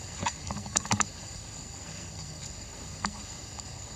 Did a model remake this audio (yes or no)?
yes